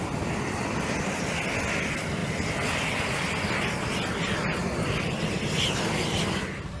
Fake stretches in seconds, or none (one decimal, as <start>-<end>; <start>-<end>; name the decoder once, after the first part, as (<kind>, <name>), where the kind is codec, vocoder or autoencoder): none